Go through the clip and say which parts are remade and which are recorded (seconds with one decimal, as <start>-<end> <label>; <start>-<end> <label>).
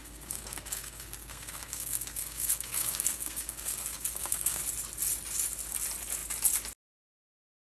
0.0-4.6 remade; 4.6-7.7 recorded